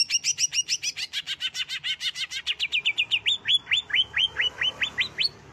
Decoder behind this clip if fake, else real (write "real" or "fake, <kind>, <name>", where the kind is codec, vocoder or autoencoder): real